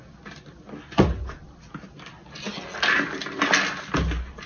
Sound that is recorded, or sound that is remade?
recorded